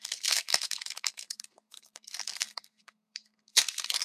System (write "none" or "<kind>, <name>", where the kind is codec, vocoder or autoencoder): codec, SNAC